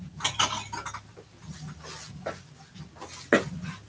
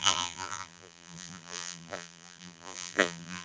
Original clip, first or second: first